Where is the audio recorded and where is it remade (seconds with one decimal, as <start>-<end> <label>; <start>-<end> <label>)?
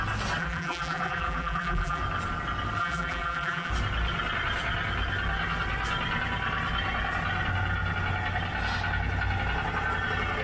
0.0-0.4 recorded; 0.4-2.0 remade; 2.0-2.8 recorded; 2.8-3.7 remade; 3.7-10.4 recorded